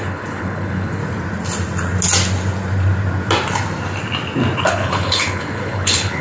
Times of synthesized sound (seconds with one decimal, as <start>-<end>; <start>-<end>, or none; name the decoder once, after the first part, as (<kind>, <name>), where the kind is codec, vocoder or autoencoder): 0.0-1.0 (codec, HILCodec); 4.7-6.2